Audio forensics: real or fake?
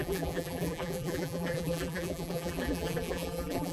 fake